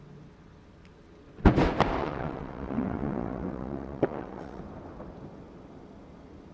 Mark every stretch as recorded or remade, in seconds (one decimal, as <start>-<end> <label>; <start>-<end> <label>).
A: 0.0-2.0 recorded; 2.0-4.6 remade; 4.6-6.5 recorded